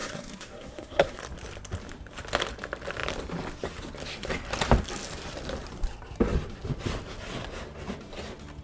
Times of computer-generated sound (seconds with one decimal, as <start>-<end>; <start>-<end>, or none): 0.0-1.2